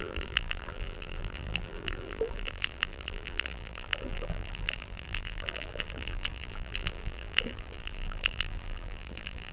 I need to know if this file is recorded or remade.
remade